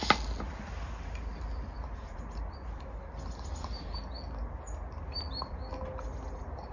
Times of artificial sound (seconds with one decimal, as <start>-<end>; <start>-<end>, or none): none